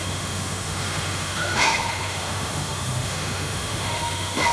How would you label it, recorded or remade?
remade